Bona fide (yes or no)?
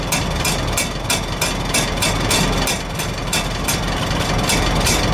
yes